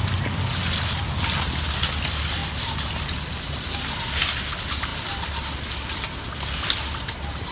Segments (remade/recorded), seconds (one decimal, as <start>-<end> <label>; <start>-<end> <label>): 0.0-7.5 recorded